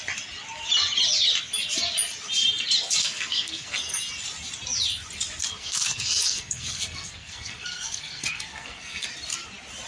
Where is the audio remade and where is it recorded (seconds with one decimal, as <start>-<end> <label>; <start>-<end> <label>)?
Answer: 0.0-3.0 recorded; 3.0-4.0 remade; 4.0-5.6 recorded; 5.6-9.1 remade; 9.1-9.9 recorded